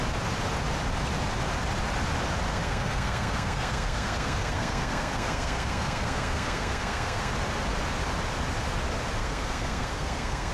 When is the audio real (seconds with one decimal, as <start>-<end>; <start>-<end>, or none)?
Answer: 0.0-2.5; 7.3-9.2